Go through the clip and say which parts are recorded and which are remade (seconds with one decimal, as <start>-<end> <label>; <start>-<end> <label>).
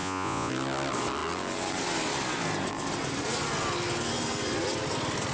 0.0-0.5 remade; 0.5-5.3 recorded